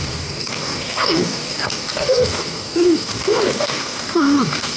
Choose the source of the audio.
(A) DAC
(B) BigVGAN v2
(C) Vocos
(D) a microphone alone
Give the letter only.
A